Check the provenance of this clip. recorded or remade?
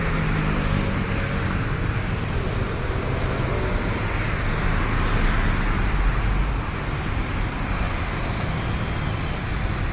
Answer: recorded